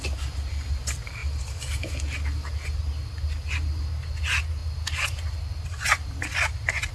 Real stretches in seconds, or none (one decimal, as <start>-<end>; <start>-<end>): 0.0-6.9